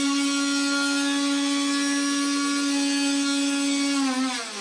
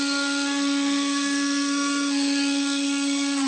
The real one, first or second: first